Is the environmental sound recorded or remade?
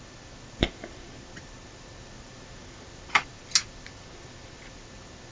recorded